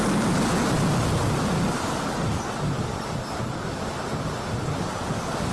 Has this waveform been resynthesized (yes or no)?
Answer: no